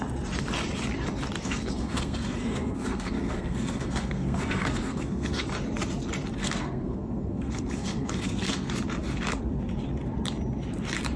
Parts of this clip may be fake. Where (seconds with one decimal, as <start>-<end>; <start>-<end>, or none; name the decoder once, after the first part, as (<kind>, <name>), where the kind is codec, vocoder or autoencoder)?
1.4-5.4 (codec, SNAC); 6.4-8.7

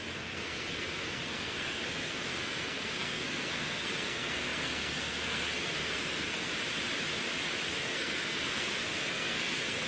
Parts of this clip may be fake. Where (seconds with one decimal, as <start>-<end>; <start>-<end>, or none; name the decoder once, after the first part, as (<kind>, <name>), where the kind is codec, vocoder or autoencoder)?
0.0-6.5 (codec, SNAC); 7.8-9.9

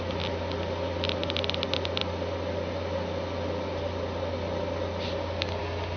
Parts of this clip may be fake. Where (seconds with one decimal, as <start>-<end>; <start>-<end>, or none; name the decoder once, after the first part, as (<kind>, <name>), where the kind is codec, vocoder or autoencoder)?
none

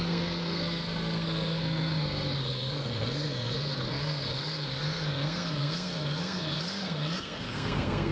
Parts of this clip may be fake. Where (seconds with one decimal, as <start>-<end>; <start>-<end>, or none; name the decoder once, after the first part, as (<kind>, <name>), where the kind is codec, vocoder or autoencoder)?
0.0-8.1 (codec, SNAC)

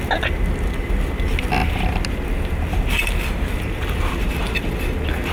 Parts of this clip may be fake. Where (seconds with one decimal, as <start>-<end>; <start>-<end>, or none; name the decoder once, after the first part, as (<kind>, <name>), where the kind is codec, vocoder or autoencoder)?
none

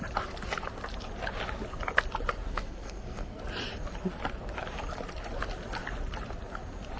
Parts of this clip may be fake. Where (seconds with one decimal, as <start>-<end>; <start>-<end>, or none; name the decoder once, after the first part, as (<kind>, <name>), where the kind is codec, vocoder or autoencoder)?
2.5-3.4 (codec, SNAC)

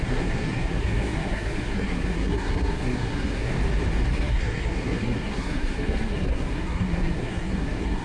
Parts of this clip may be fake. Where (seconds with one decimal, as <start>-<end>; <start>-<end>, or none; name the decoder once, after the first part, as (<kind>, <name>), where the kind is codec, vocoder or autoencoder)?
0.0-3.5 (codec, SNAC); 4.1-8.0

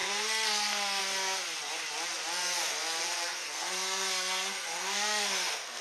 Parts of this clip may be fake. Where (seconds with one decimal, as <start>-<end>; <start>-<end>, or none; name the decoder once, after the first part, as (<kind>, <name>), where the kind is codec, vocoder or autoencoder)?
0.0-1.0 (codec, SNAC); 3.0-5.8